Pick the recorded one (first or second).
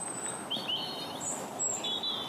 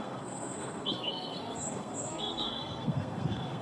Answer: first